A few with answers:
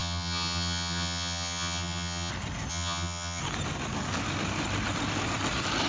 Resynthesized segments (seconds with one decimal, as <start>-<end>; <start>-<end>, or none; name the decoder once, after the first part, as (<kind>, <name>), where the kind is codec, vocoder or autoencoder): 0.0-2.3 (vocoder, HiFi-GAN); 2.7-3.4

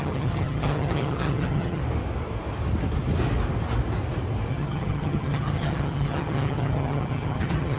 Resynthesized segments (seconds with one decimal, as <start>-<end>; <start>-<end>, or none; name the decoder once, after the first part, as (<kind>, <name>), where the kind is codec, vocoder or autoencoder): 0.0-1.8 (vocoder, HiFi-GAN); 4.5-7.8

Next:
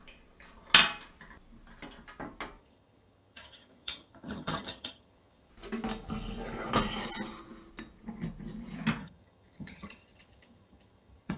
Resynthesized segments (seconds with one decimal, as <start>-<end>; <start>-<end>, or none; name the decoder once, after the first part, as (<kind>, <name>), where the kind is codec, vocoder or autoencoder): 2.6-5.5 (vocoder, HiFi-GAN); 9.0-11.4